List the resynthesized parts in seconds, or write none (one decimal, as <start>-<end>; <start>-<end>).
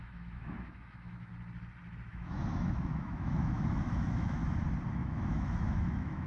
0.0-1.3; 2.1-4.4; 4.9-6.3